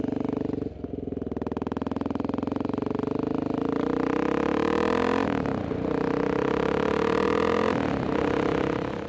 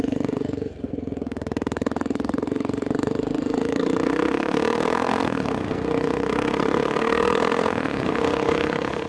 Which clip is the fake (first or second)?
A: second